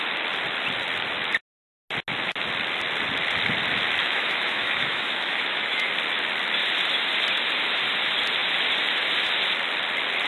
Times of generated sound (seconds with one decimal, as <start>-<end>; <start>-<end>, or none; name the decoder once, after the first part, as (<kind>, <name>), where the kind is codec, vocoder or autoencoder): 4.0-5.9 (autoencoder, DAC-VAE)